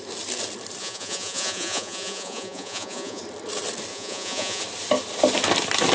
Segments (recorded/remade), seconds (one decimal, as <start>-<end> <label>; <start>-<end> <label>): 0.0-0.8 recorded; 0.8-3.2 remade; 3.2-3.9 recorded; 3.9-4.6 remade; 4.6-5.9 recorded